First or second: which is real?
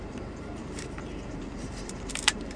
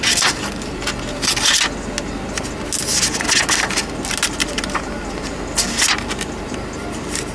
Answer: second